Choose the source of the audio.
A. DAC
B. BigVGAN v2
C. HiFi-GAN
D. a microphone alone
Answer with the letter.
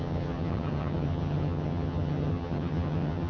C